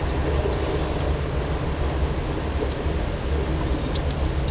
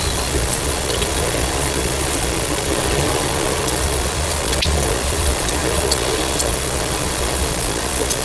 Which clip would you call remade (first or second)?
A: second